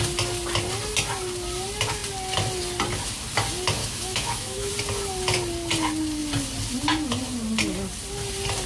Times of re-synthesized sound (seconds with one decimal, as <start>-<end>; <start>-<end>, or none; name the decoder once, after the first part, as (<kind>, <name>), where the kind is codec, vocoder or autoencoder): 3.8-4.7 (autoencoder, DAC-VAE)